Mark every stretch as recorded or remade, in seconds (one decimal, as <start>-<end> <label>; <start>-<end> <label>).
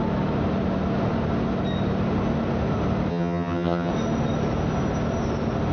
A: 0.0-3.1 recorded; 3.1-3.9 remade; 3.9-5.7 recorded